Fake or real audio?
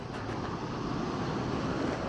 real